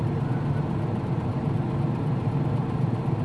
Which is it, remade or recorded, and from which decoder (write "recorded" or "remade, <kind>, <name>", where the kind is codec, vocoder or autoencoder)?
remade, vocoder, BigVGAN v2